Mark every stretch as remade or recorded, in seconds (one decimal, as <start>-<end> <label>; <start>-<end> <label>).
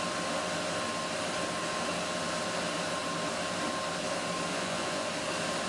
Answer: 0.0-4.5 recorded; 4.5-5.1 remade; 5.1-5.7 recorded